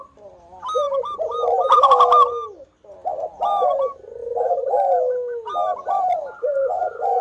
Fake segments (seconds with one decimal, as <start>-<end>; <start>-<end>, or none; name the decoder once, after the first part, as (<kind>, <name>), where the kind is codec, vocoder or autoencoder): none